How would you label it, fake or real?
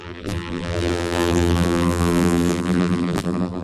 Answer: fake